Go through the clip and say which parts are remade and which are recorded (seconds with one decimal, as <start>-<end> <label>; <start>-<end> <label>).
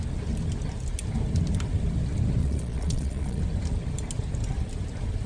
0.0-2.4 recorded; 2.4-3.4 remade; 3.4-5.3 recorded